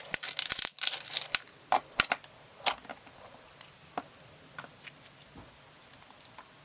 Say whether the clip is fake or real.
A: real